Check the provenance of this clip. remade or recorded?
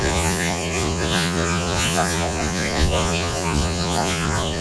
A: remade